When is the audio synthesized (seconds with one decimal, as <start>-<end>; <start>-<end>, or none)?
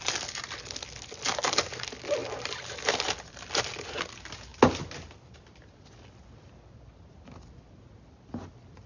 2.2-3.6